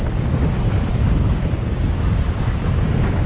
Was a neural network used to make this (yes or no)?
yes